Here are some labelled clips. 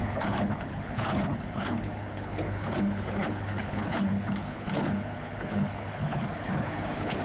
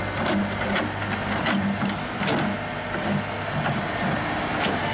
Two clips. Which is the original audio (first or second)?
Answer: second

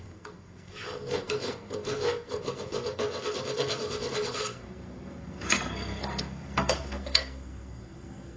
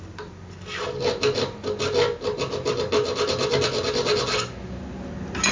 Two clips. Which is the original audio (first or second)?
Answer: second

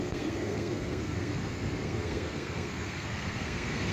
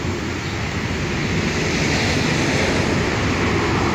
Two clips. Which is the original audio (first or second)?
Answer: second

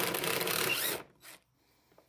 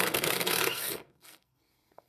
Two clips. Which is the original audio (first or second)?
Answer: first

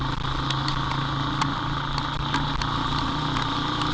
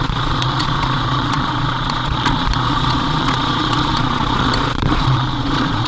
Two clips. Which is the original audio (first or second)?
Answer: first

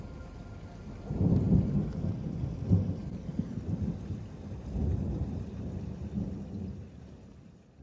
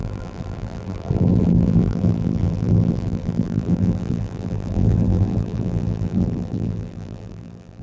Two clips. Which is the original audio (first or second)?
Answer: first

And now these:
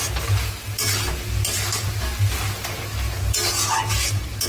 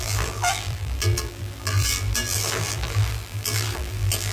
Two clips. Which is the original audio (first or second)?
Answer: first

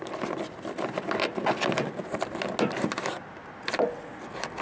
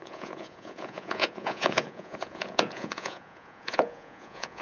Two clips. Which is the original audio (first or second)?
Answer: first